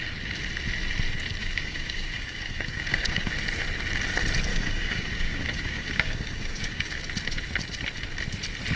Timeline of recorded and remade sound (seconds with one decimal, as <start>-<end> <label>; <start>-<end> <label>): 0.0-1.4 recorded; 1.4-3.3 remade; 3.3-4.5 recorded; 4.5-7.0 remade; 7.0-8.8 recorded